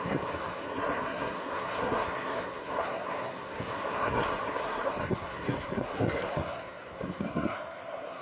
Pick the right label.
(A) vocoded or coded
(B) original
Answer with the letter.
A